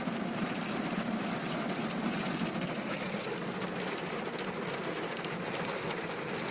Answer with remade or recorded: remade